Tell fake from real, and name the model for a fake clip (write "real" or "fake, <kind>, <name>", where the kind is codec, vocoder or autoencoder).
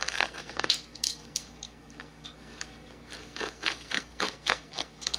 fake, codec, SNAC